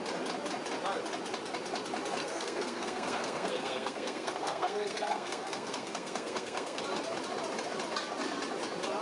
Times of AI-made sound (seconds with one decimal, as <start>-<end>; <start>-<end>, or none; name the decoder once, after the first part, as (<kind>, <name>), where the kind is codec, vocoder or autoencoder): 2.2-6.8 (codec, SNAC)